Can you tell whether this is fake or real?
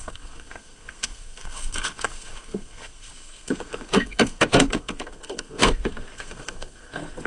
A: fake